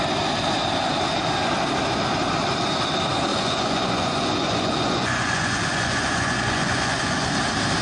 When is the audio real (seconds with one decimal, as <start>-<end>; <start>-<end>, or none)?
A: 0.0-3.3; 7.3-7.8